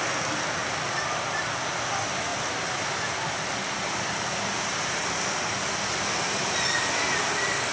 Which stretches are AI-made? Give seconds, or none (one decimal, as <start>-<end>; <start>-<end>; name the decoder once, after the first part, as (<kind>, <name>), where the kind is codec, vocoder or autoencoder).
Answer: none